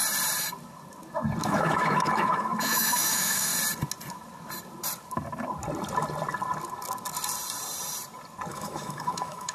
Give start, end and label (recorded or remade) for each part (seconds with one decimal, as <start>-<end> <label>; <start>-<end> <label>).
0.0-1.4 recorded; 1.4-3.5 remade; 3.5-8.5 recorded; 8.5-9.5 remade